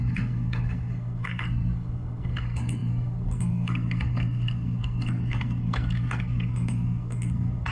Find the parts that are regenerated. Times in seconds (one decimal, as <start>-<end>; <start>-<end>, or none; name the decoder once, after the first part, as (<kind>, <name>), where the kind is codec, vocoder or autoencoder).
0.0-7.7 (codec, SNAC)